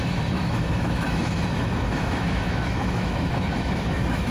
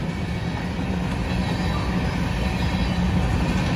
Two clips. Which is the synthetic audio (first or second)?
first